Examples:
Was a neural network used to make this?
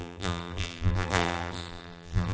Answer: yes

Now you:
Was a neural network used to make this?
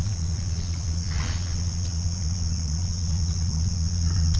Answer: yes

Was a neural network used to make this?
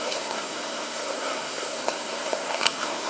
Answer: yes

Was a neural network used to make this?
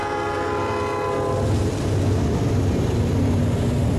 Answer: no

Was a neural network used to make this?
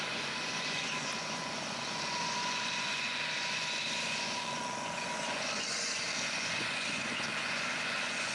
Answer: yes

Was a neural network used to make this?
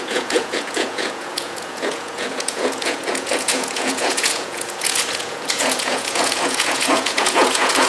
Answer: yes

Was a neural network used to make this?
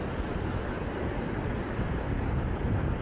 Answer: no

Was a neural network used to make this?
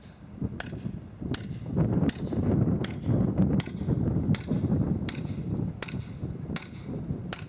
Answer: no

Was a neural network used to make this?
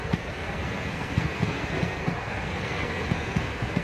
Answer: yes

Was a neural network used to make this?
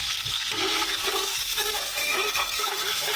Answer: yes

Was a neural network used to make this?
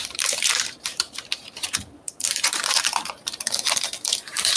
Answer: yes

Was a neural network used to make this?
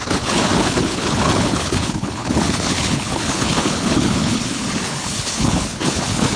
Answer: yes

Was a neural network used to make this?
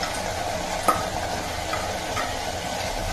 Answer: no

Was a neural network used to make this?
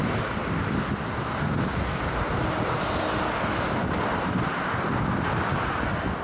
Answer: no